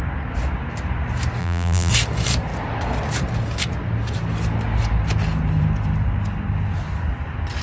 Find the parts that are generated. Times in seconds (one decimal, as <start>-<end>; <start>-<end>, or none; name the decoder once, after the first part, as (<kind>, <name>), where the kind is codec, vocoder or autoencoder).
1.4-1.9 (vocoder, BigVGAN v2)

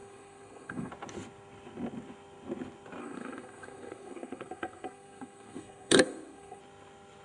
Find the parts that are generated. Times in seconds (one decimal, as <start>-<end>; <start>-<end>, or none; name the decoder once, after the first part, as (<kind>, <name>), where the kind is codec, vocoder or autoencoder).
0.0-0.9 (codec, SNAC); 3.0-6.6

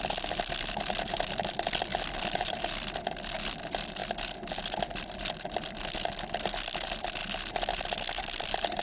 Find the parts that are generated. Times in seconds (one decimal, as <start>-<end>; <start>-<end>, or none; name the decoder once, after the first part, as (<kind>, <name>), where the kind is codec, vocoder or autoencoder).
none

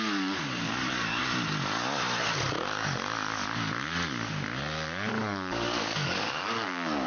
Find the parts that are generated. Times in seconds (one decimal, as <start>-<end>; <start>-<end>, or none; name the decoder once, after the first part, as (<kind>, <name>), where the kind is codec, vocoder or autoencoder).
0.0-1.2 (codec, DAC); 5.1-7.1

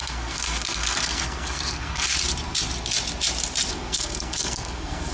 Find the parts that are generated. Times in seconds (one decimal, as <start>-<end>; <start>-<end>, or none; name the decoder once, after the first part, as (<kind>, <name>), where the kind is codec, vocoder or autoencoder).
0.0-2.1 (codec, SNAC); 3.7-5.1